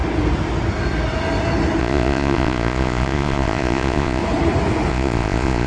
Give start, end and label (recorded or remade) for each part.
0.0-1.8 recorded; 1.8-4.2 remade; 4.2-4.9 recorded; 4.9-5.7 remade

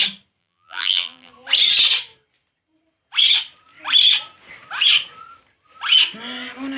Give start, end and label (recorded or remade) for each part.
0.0-0.4 recorded; 0.4-1.3 remade; 1.3-6.8 recorded

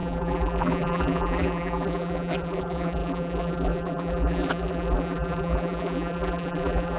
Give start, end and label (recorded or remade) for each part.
0.0-7.0 remade